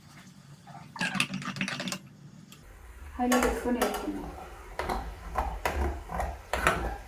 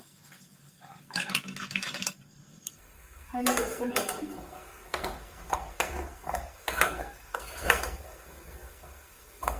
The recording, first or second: first